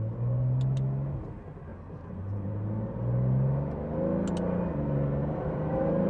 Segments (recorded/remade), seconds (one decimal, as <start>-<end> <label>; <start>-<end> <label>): 0.0-1.7 recorded; 1.7-2.5 remade; 2.5-5.2 recorded; 5.2-6.1 remade